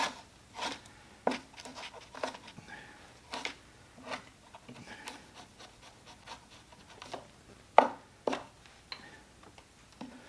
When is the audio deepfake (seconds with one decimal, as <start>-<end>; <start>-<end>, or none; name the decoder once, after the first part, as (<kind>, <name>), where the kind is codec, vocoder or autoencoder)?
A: none